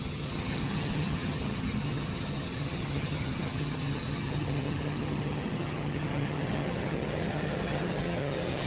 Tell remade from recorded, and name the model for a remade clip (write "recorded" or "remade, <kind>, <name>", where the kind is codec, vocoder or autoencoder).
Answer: remade, vocoder, HiFi-GAN